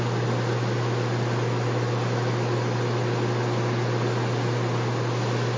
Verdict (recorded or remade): recorded